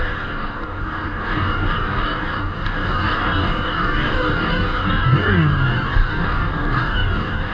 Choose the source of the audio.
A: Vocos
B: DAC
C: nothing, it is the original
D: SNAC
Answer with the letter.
B